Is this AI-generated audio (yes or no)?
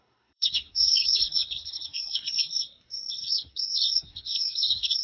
yes